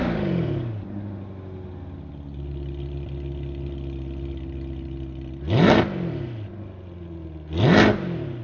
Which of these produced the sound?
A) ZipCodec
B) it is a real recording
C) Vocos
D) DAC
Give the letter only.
B